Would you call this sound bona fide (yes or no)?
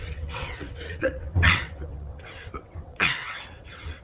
no